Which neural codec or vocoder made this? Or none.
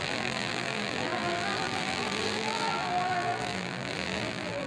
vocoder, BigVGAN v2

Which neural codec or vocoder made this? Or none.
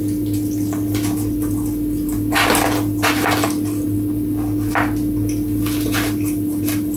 none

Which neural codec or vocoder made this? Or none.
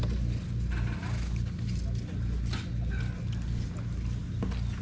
none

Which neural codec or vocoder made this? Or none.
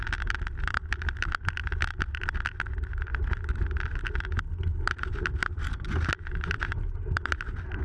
none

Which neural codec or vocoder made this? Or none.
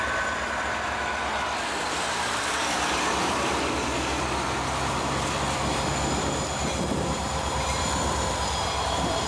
vocoder, BigVGAN v2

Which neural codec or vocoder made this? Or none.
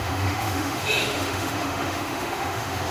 autoencoder, DAC-VAE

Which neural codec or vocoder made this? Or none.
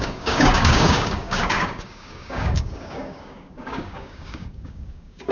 codec, DAC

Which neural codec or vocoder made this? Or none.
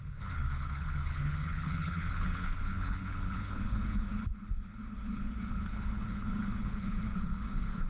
codec, HILCodec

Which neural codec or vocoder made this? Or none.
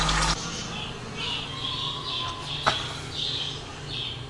none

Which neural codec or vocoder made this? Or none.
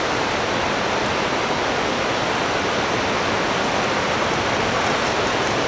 none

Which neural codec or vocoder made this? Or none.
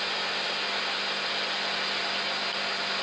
none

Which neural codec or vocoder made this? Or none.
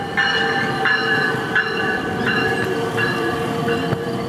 vocoder, BigVGAN v2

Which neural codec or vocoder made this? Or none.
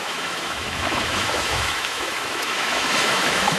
autoencoder, DAC-VAE